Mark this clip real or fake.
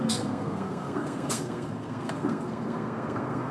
fake